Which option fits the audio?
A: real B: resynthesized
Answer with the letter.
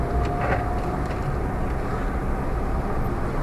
A